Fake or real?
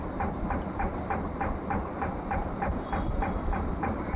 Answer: real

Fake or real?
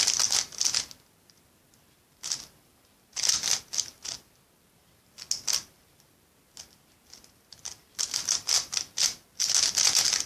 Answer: real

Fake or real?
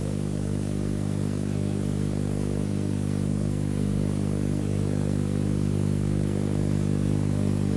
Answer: fake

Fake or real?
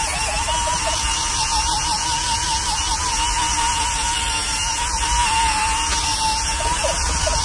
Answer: real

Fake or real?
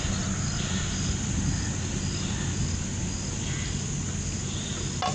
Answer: real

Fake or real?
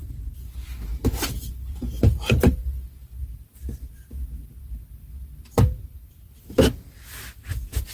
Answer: real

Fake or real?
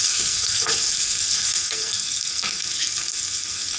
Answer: fake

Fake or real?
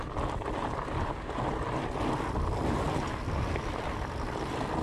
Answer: real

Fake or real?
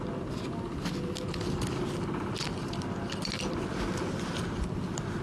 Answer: real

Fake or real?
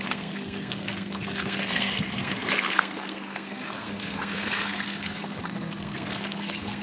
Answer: fake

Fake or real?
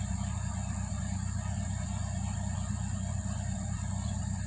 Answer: real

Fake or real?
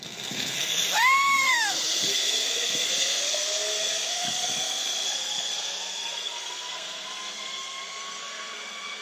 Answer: fake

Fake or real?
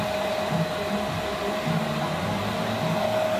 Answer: real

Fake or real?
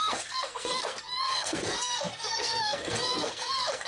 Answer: fake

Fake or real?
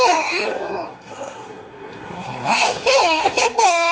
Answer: fake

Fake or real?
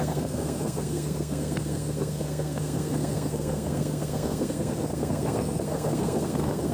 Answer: fake